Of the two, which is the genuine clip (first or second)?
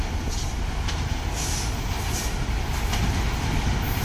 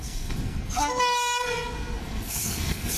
first